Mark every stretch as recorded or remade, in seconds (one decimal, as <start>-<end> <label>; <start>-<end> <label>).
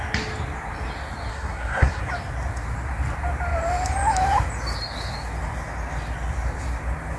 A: 0.0-1.3 recorded; 1.3-2.0 remade; 2.0-7.2 recorded